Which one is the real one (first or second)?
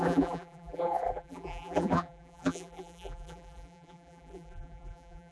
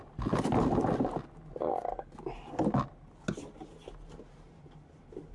second